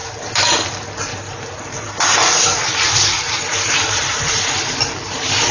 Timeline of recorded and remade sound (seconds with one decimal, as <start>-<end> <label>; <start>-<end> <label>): 0.0-0.7 remade; 0.7-1.1 recorded; 1.1-4.4 remade; 4.4-5.5 recorded